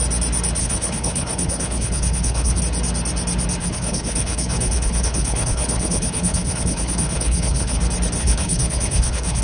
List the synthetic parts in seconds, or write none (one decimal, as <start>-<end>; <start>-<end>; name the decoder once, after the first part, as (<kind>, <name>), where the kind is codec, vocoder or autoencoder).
0.6-2.6 (codec, HILCodec); 3.6-7.8; 8.2-9.4